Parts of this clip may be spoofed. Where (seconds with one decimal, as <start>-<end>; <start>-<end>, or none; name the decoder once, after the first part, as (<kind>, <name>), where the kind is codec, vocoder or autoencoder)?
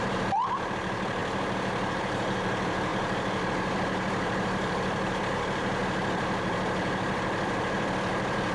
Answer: 0.0-8.5 (vocoder, BigVGAN v2)